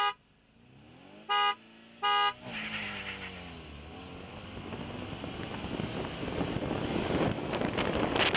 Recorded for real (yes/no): yes